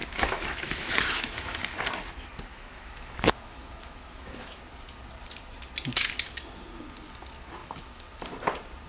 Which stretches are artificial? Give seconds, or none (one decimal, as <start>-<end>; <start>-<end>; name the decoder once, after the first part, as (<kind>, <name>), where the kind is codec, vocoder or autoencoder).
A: 0.0-1.6 (autoencoder, DAC-VAE); 2.5-4.6; 7.6-8.2